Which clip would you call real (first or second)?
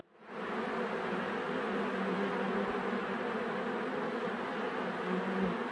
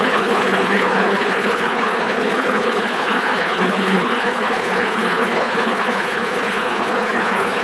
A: first